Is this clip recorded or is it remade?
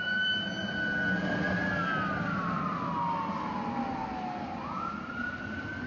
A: recorded